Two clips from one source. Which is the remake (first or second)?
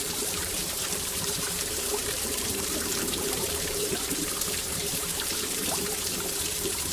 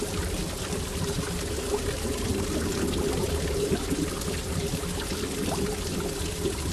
first